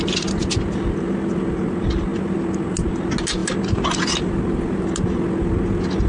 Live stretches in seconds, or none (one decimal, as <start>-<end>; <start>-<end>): 0.0-6.1